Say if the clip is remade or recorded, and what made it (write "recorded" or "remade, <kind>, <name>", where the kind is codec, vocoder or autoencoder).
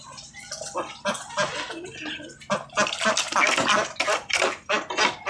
recorded